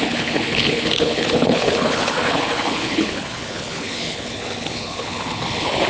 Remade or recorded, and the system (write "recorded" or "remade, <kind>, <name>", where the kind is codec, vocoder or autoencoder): remade, codec, HILCodec